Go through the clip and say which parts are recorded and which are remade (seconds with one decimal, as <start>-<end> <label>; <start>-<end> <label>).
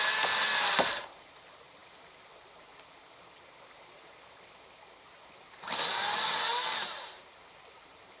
0.0-8.2 recorded